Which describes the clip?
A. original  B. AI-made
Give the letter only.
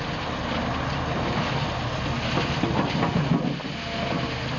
A